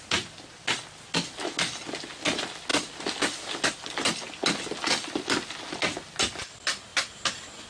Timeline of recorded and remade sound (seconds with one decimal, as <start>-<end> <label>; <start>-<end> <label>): 0.0-7.7 recorded